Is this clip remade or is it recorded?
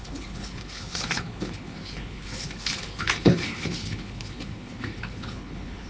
remade